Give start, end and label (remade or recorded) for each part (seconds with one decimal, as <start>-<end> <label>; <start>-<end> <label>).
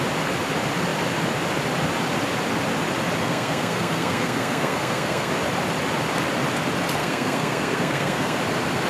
0.0-3.2 recorded; 3.2-5.3 remade; 5.3-7.0 recorded; 7.0-8.4 remade; 8.4-8.9 recorded